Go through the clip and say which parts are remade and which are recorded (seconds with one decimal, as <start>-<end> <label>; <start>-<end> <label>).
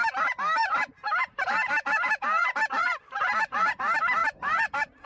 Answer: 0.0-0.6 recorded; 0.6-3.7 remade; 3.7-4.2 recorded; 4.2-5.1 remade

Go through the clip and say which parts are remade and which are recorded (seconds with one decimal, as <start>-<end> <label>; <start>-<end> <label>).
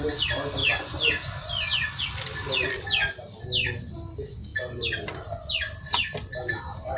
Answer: 0.0-7.0 recorded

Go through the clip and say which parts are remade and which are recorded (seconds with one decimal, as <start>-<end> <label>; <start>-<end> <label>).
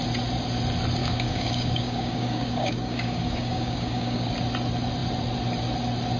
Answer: 0.0-1.0 recorded; 1.0-4.3 remade; 4.3-6.2 recorded